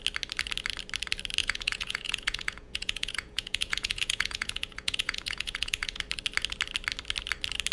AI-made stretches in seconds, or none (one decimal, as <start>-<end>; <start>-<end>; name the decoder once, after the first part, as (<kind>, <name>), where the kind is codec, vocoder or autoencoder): 1.4-6.0 (vocoder, Vocos)